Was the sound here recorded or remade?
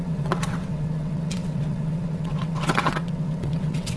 remade